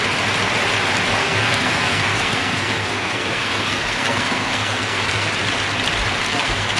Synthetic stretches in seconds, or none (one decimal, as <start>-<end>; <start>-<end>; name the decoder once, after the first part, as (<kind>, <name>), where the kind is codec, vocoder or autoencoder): 1.2-5.3 (codec, SNAC); 6.2-6.8